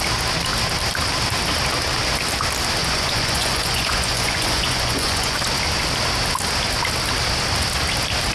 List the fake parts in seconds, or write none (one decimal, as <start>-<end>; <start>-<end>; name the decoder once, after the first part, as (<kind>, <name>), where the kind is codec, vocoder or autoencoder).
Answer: 2.8-5.4 (vocoder, Vocos)